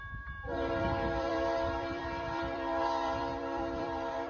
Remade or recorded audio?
remade